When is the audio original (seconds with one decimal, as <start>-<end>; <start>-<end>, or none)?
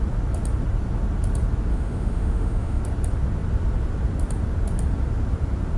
0.0-1.7; 2.8-5.8